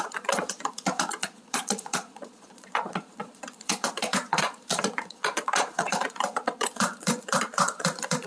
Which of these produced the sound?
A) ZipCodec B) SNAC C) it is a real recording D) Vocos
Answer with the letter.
D